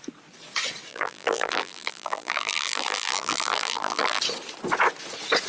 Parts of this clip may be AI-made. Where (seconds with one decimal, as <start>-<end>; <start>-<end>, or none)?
0.9-4.2